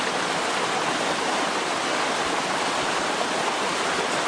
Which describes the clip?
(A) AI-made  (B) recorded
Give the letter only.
B